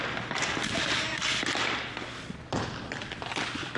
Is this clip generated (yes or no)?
no